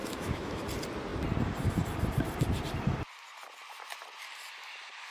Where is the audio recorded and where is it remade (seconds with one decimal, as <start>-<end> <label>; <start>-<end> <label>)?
0.0-0.6 remade; 0.6-5.1 recorded